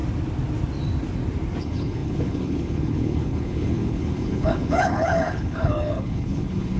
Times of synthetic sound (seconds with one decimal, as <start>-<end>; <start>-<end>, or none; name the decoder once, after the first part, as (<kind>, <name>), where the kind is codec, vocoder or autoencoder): 1.6-6.8 (codec, HILCodec)